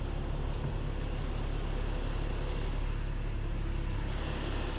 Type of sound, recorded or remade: recorded